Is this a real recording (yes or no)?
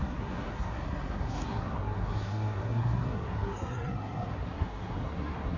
no